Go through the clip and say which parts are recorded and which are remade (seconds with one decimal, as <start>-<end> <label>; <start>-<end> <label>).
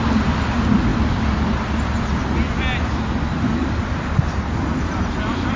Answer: 0.0-5.6 recorded